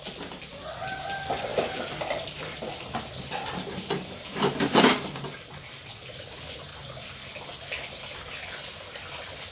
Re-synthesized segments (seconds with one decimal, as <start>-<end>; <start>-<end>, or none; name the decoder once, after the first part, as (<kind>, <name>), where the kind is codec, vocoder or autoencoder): 1.5-2.9 (vocoder, BigVGAN v2); 4.3-5.8

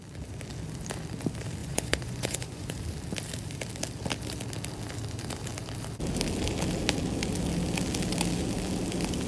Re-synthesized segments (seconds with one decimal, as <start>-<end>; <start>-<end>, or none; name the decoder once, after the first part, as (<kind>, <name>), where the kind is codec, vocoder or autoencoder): 1.6-2.8 (vocoder, Vocos)

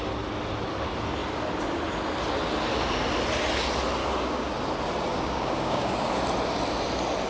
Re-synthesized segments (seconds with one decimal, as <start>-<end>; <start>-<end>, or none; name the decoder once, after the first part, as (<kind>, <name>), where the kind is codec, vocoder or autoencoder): 4.0-4.5 (codec, DAC); 5.1-6.1